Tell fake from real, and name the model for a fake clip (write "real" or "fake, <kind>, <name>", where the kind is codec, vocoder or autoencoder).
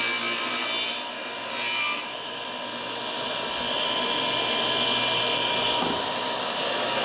real